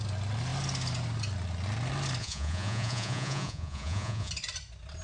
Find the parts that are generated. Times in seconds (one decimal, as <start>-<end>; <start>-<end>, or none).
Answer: 2.2-4.3